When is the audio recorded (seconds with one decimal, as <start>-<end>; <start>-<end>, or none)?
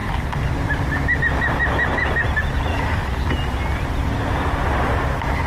0.0-2.7; 3.3-5.5